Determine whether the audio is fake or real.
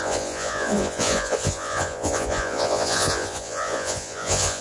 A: fake